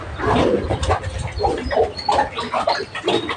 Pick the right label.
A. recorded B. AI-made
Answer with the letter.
A